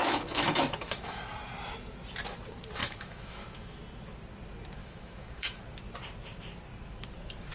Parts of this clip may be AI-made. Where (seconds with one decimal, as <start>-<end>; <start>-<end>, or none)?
0.0-1.2; 2.8-3.8; 4.8-5.6